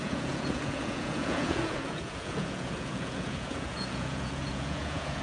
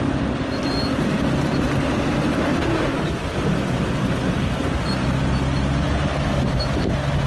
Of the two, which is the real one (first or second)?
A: second